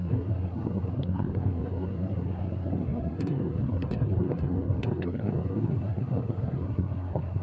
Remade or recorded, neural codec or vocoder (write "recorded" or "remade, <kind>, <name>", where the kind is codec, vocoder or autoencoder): remade, codec, SNAC